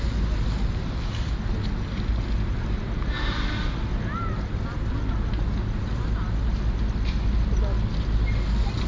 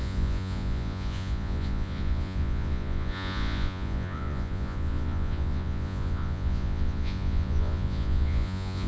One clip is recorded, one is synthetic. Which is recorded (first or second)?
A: first